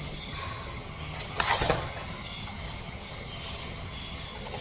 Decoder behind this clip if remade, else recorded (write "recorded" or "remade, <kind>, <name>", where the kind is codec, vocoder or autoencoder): remade, vocoder, HiFi-GAN